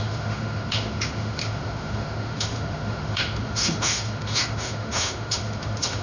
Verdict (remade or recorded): remade